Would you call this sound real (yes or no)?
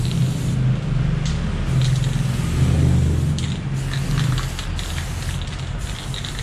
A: yes